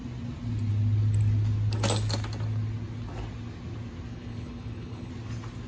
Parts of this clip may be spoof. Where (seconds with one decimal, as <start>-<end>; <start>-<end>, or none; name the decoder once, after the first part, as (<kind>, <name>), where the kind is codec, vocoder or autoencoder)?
4.1-5.1 (codec, HILCodec)